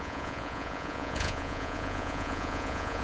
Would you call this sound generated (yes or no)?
yes